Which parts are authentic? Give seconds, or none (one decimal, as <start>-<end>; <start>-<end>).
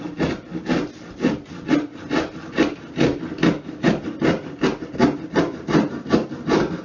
0.0-5.0; 5.8-6.8